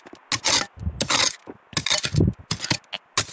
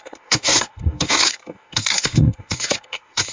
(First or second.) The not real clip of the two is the second